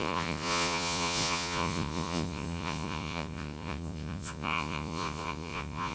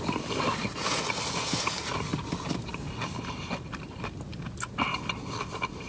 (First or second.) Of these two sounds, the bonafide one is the second